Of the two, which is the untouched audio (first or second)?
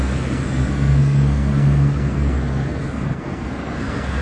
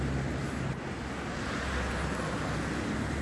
second